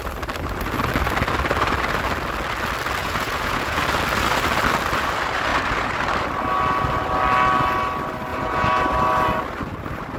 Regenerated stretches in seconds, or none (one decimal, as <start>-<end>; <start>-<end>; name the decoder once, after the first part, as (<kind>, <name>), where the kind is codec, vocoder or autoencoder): 3.0-3.8 (vocoder, Vocos); 8.3-8.8